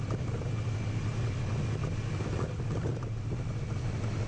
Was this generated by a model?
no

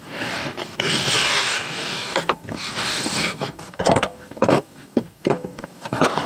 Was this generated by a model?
yes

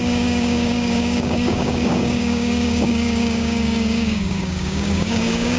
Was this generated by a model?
yes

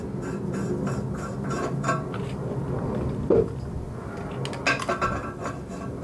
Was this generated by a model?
no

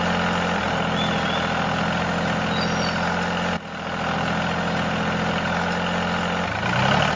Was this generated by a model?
no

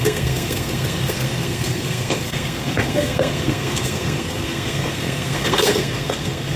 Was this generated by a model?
yes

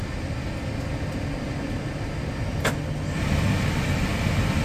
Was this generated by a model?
no